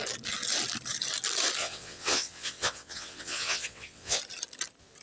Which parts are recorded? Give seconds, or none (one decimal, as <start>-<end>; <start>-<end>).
0.0-1.6; 4.2-5.0